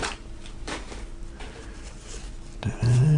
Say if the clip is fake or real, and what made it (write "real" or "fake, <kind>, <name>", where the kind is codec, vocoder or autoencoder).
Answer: real